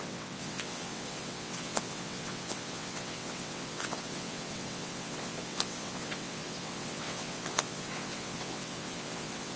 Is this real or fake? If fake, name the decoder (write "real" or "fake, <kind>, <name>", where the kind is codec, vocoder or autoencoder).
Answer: fake, vocoder, WaveNeXt